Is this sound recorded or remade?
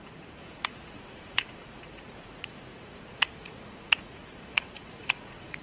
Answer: remade